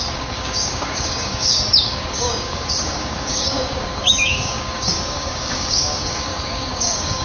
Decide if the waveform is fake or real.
fake